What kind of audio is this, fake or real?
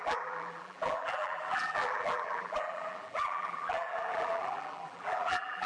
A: fake